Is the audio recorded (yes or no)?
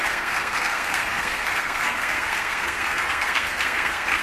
no